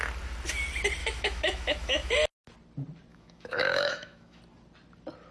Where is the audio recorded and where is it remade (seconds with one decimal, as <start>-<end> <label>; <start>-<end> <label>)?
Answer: 0.0-1.0 recorded; 1.0-2.1 remade; 2.1-3.1 recorded; 3.1-4.4 remade; 4.4-5.3 recorded